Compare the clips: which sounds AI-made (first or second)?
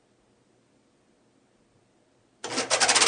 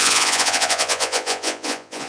second